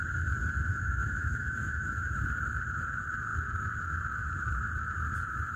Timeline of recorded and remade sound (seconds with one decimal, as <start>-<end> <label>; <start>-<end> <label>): 0.0-0.7 recorded; 0.7-2.2 remade; 2.2-5.6 recorded

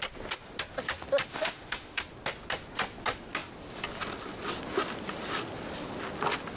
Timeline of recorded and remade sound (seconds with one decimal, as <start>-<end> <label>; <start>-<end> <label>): 0.0-1.3 recorded; 1.3-2.0 remade; 2.0-6.6 recorded

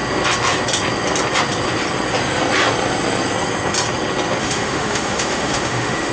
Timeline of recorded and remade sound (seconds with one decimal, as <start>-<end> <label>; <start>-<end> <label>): 0.0-4.4 recorded; 4.4-6.1 remade

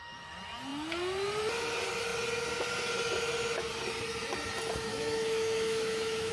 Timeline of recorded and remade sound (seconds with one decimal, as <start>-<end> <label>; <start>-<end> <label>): 0.0-4.9 recorded; 4.9-6.3 remade

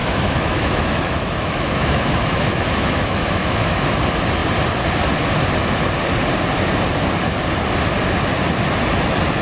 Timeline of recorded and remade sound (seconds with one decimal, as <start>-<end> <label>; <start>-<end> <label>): 0.0-3.9 remade; 3.9-9.4 recorded

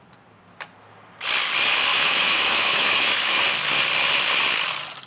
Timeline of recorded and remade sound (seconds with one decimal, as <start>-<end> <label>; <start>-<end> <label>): 0.0-1.9 recorded; 1.9-3.4 remade; 3.4-5.1 recorded

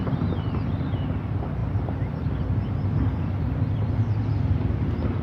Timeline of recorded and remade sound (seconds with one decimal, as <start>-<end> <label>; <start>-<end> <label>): 0.0-5.2 recorded

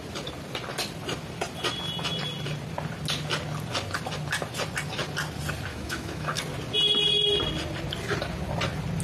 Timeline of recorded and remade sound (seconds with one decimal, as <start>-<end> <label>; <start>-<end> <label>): 0.0-5.7 recorded; 5.7-6.4 remade; 6.4-9.0 recorded